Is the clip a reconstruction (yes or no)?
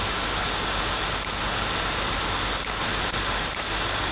no